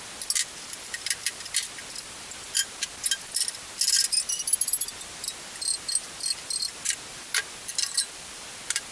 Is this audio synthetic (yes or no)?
no